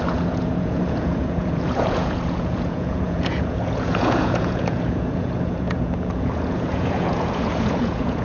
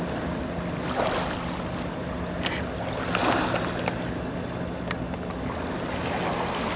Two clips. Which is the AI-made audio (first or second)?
first